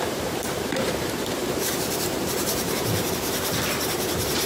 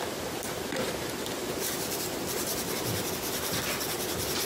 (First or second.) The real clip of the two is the second